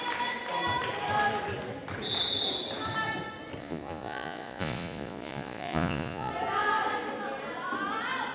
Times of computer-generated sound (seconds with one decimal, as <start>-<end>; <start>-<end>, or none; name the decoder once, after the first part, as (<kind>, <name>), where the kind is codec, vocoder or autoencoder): 3.6-6.3 (vocoder, Vocos)